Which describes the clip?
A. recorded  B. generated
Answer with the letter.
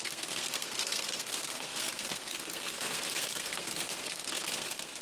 B